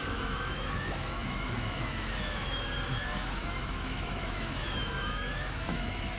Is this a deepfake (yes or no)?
yes